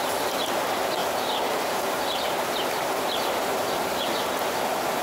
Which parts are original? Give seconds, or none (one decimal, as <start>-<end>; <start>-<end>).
0.0-1.0; 4.0-5.0